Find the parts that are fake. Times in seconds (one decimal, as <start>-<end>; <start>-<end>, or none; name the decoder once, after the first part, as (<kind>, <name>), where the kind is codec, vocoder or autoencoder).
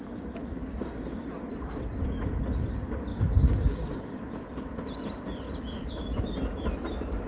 0.7-1.3 (codec, DAC); 3.1-4.2